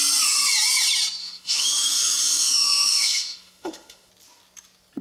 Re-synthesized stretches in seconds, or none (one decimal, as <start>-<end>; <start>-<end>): 1.2-4.1